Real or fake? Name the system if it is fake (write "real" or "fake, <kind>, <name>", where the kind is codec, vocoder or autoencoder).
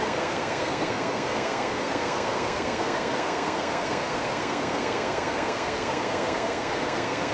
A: fake, codec, SNAC